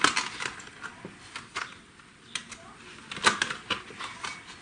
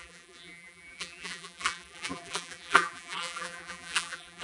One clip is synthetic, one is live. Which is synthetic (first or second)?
second